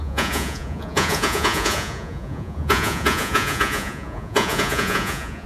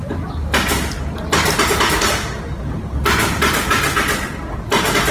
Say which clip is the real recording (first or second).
second